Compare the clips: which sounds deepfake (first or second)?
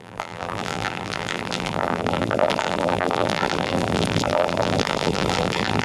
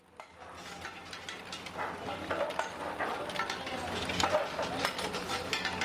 first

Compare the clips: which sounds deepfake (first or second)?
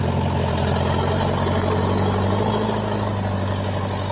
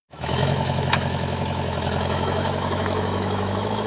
second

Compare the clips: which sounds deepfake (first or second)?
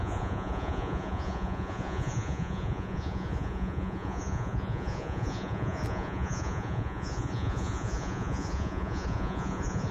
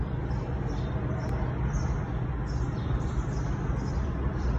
first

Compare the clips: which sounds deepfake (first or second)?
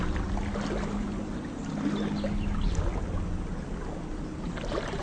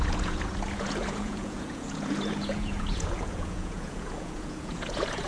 second